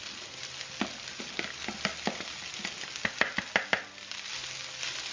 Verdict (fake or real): real